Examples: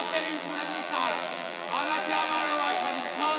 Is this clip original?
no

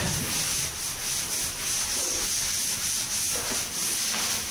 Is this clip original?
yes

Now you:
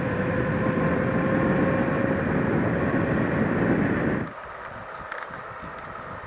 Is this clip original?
yes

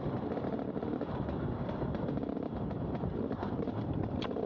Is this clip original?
no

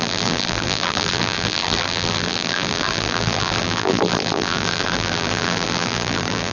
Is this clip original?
no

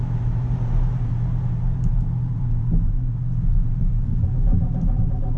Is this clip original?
no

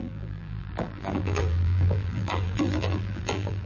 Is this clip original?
no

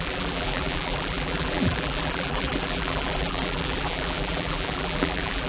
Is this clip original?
no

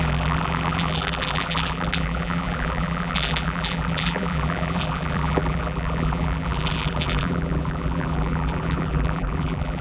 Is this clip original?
no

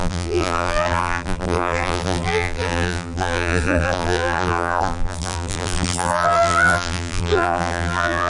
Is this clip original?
no